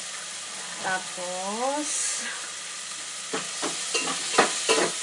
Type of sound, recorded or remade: recorded